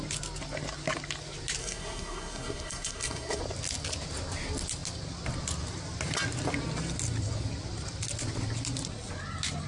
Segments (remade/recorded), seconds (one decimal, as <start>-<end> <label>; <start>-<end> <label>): 0.0-1.6 recorded; 1.6-3.4 remade; 3.4-9.7 recorded